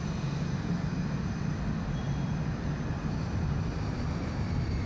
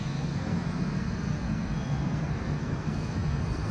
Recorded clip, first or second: first